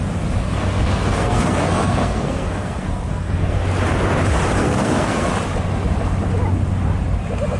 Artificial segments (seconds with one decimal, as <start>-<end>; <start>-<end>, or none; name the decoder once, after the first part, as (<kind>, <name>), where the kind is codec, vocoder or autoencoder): 0.4-3.6 (codec, SNAC); 4.6-5.3